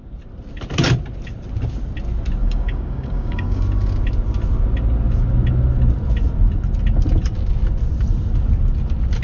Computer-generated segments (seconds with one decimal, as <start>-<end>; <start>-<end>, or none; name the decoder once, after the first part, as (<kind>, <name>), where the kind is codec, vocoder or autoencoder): 2.4-3.6 (codec, DAC)